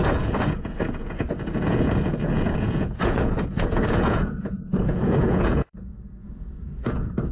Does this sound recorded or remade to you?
remade